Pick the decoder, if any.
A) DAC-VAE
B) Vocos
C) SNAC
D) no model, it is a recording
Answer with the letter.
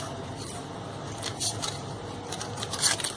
D